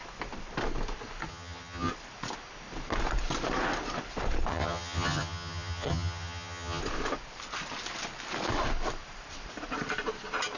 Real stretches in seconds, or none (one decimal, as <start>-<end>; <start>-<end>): 0.0-1.3; 1.9-4.5; 6.8-10.6